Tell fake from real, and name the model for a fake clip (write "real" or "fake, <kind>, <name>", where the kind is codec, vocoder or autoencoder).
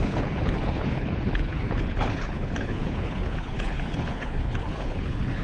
fake, codec, HILCodec